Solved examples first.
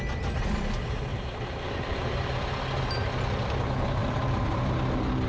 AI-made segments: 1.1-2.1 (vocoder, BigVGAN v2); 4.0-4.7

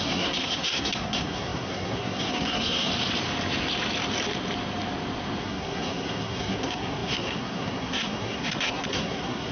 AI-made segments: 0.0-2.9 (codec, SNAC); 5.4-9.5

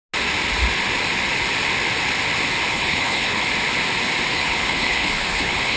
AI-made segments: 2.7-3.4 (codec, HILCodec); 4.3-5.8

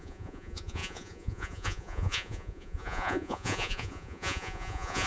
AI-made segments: 0.0-5.1 (vocoder, Vocos)

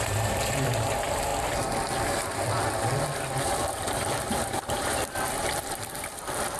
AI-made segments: 0.0-1.3 (vocoder, BigVGAN v2); 3.4-6.6